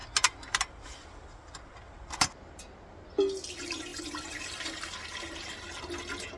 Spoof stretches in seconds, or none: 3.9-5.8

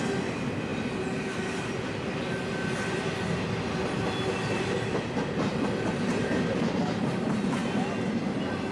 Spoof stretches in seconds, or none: none

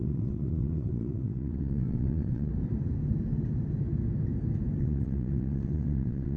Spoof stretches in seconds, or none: 0.0-2.5; 4.8-6.4

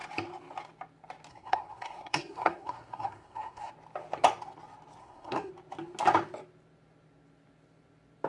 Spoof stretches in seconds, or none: 1.3-3.7; 5.0-5.5

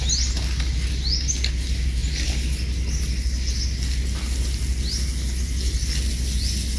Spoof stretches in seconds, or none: none

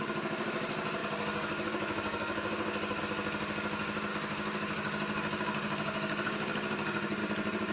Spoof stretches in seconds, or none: 1.0-3.0; 4.1-7.2

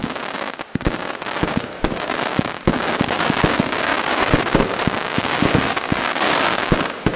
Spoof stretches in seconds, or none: 0.0-3.9; 4.8-7.2

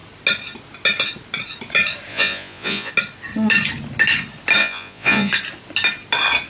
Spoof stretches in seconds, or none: 2.1-2.9; 4.6-5.3